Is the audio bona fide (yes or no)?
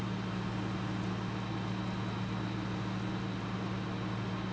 yes